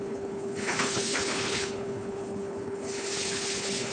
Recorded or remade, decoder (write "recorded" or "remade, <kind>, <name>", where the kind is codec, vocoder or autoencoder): remade, codec, HILCodec